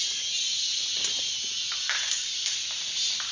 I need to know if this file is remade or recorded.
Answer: recorded